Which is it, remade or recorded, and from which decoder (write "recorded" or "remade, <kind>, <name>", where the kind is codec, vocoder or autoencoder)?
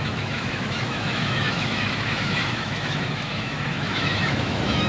remade, autoencoder, DAC-VAE